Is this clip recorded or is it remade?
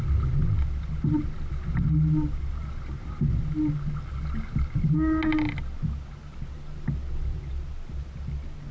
recorded